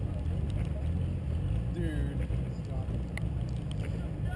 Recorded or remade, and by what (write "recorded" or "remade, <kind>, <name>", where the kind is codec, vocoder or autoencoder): recorded